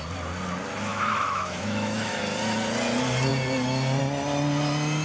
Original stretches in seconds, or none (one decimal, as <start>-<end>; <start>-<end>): 0.0-0.9; 2.2-5.0